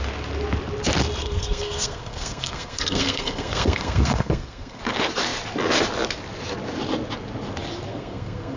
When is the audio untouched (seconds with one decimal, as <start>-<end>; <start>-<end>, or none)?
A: 0.0-1.2; 4.8-7.9

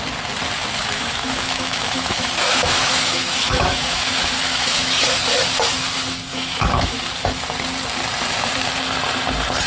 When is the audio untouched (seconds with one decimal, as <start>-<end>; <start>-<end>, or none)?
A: 0.0-0.8; 5.0-6.3; 7.0-9.7

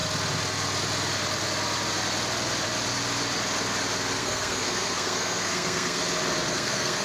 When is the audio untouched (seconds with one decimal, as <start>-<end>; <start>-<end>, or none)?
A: 0.0-4.2; 6.0-6.5

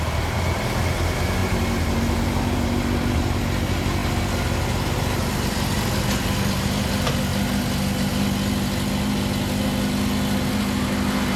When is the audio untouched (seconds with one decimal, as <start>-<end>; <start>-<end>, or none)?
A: 0.0-11.4